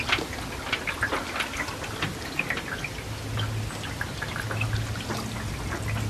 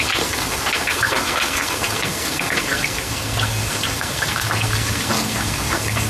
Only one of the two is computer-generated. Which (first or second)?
second